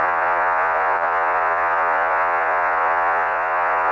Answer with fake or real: fake